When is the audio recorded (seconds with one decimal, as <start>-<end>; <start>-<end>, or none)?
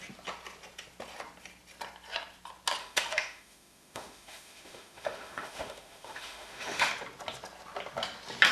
0.0-2.8; 6.9-8.5